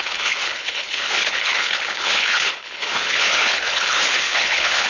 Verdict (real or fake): fake